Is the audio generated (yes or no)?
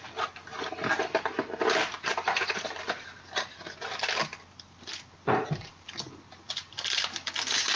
no